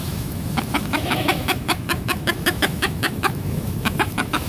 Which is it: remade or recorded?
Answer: remade